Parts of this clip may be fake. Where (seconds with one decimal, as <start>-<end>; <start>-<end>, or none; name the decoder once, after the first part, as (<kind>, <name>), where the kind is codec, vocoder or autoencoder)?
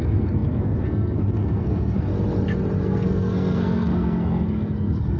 0.0-2.1 (codec, SNAC); 2.8-5.2